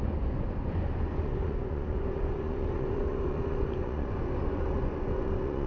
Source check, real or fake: fake